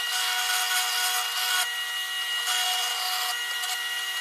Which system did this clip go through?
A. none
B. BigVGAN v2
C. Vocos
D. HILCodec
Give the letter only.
A